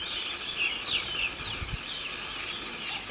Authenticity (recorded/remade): recorded